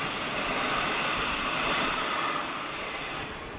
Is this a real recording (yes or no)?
yes